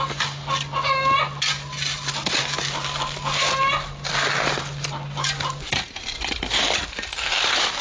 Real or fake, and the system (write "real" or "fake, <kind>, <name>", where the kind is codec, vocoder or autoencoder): real